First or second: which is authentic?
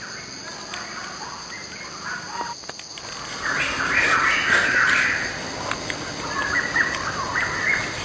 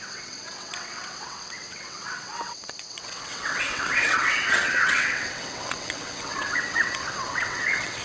first